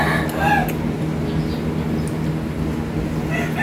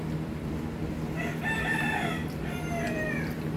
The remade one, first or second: second